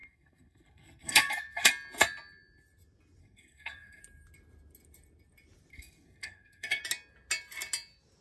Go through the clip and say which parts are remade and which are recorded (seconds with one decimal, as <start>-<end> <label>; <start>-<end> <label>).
0.0-1.7 remade; 1.7-3.2 recorded; 3.2-4.0 remade; 4.0-5.7 recorded; 5.7-6.8 remade; 6.8-8.2 recorded